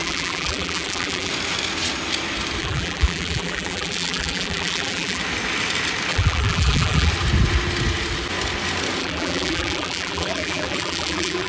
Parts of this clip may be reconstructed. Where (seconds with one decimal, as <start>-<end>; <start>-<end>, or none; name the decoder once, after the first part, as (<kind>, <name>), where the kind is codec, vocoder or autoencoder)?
0.0-1.3 (vocoder, BigVGAN v2); 2.6-5.2; 6.1-7.1; 9.0-11.5